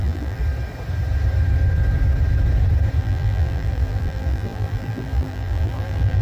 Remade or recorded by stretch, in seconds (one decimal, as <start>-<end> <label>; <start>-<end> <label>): 0.0-0.4 remade; 0.4-3.0 recorded; 3.0-6.2 remade